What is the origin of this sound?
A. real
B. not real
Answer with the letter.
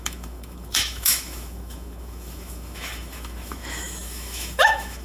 B